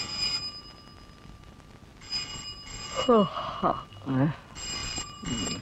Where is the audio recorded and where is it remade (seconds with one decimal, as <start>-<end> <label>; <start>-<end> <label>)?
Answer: 0.0-4.8 recorded; 4.8-5.6 remade